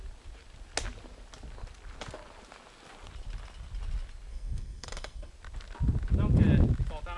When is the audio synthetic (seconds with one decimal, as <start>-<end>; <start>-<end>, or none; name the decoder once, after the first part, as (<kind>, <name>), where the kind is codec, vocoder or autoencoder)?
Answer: 4.3-5.3 (codec, SNAC)